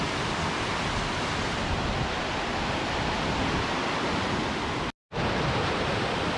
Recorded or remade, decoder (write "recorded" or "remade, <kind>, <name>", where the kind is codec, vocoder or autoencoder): recorded